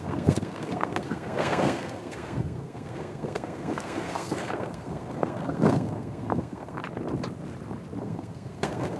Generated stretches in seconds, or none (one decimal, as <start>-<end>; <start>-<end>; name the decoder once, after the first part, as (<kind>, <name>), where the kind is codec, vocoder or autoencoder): 0.0-6.8 (codec, SNAC); 8.0-9.0